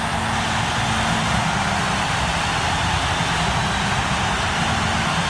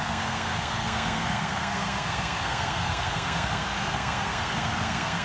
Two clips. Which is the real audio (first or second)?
first